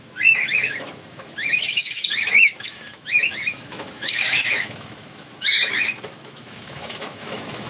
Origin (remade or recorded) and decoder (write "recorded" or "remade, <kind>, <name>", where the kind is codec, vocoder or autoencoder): remade, autoencoder, DAC-VAE